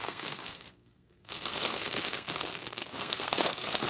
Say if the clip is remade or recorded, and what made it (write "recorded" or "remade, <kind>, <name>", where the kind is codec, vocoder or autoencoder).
remade, codec, SNAC